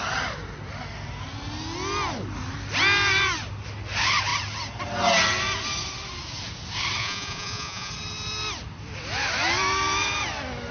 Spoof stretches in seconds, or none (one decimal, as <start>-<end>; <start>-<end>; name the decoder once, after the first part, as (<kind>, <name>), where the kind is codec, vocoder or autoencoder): 7.0-7.9 (vocoder, Vocos)